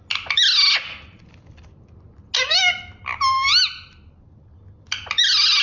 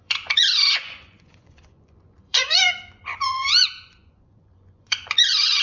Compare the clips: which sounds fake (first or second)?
second